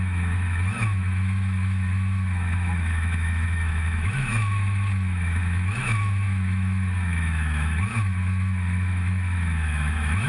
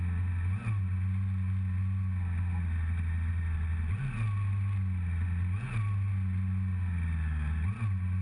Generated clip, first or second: first